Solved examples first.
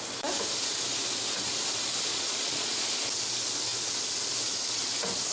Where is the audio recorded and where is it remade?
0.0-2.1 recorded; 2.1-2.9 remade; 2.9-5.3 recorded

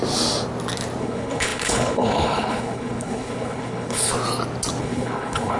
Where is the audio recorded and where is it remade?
0.0-1.0 recorded; 1.0-4.1 remade; 4.1-4.8 recorded; 4.8-5.6 remade

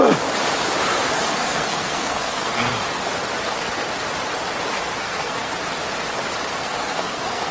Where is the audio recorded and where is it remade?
0.0-1.1 recorded; 1.1-2.7 remade; 2.7-5.0 recorded; 5.0-5.5 remade; 5.5-6.5 recorded; 6.5-7.5 remade

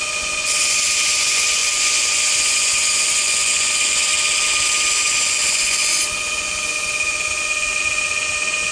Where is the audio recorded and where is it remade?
0.0-4.1 remade; 4.1-4.9 recorded; 4.9-8.7 remade

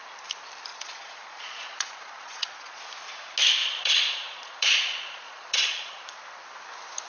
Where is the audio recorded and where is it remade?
0.0-0.7 recorded; 0.7-2.8 remade; 2.8-3.6 recorded; 3.6-6.0 remade; 6.0-7.1 recorded

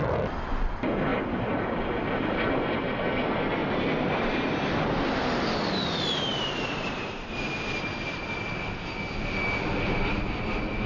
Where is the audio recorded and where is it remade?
0.0-3.6 recorded; 3.6-4.5 remade; 4.5-6.3 recorded; 6.3-8.3 remade; 8.3-10.9 recorded

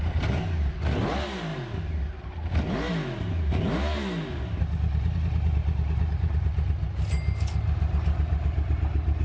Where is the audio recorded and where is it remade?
0.0-9.2 recorded